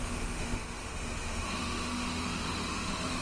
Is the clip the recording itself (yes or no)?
no